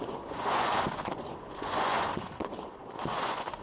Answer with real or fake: fake